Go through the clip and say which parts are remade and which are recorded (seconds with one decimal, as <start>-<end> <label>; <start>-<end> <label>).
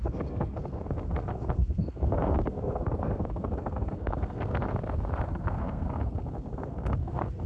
0.0-7.5 remade